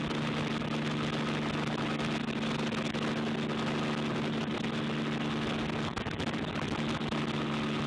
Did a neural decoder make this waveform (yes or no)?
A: no